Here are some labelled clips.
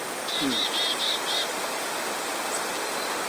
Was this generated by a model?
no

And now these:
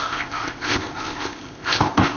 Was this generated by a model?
yes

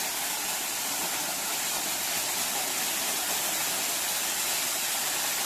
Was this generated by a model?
no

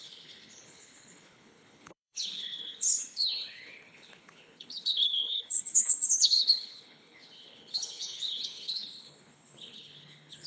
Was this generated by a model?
yes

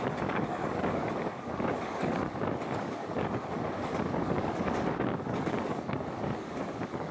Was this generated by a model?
yes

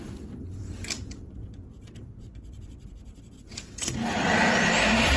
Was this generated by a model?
yes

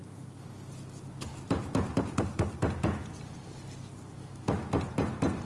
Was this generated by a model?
no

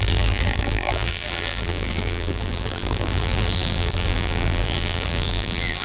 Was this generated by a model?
yes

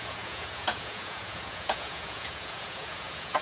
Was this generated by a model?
yes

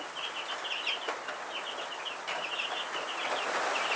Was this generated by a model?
no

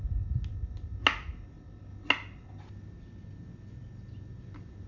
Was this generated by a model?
no